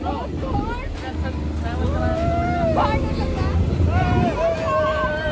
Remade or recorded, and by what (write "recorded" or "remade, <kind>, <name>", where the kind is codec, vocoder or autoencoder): recorded